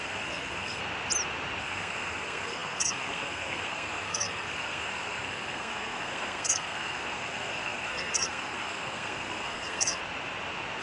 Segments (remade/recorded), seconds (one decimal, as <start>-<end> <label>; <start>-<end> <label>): 0.0-0.8 remade; 0.8-1.6 recorded; 1.6-10.0 remade; 10.0-10.8 recorded

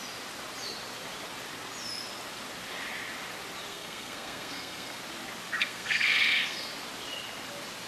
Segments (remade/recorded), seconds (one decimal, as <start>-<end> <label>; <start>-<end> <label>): 0.0-3.7 recorded; 3.7-5.0 remade; 5.0-5.6 recorded; 5.6-6.7 remade; 6.7-7.9 recorded